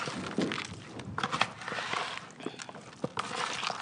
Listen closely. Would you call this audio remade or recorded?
recorded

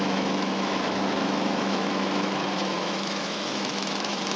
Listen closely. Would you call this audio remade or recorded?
remade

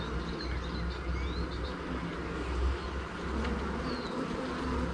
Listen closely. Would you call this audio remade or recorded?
recorded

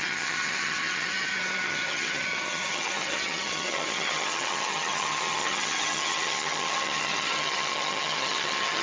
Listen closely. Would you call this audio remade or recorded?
remade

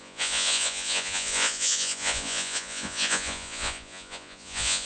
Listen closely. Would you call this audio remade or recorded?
remade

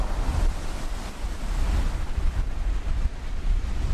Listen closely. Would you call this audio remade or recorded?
recorded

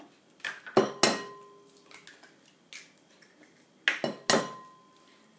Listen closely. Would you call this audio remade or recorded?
recorded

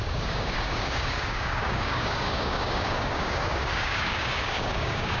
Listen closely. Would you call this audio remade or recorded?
remade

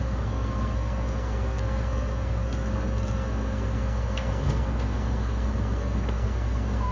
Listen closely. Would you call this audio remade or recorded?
remade